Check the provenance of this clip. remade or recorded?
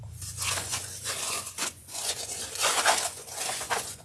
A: remade